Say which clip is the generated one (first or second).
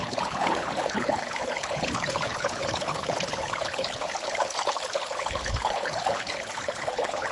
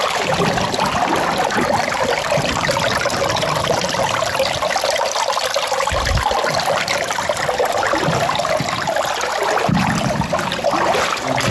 first